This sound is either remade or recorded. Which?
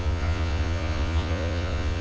remade